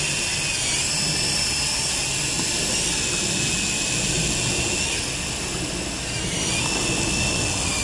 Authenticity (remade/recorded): recorded